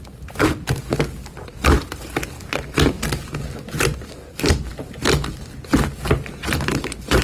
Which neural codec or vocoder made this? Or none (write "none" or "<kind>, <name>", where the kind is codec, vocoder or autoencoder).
none